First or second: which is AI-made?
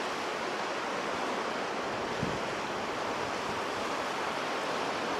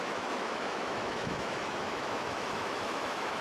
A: second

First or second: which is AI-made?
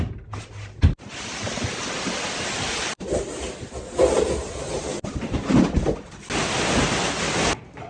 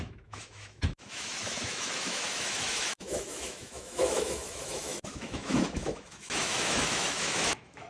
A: second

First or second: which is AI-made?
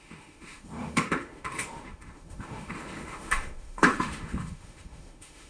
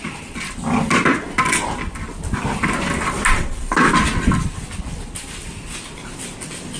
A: first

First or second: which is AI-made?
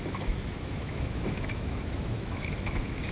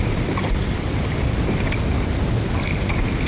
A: first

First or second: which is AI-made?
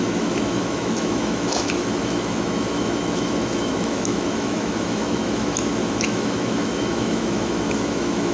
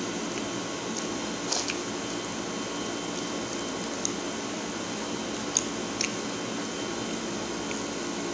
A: first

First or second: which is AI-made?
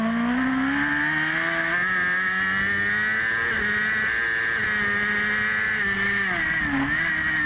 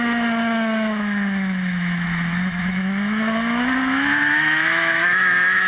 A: second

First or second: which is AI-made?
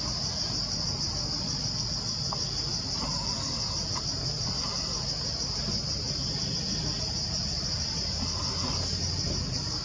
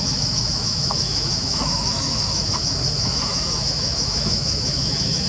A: second